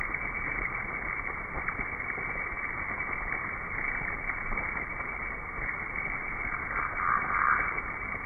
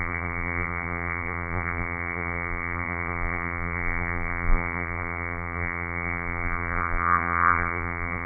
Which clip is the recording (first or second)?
first